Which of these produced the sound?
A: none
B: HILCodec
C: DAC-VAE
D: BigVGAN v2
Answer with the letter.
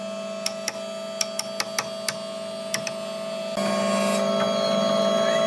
A